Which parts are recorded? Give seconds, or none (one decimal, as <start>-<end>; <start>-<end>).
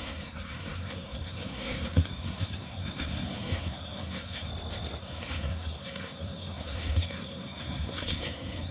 4.5-5.0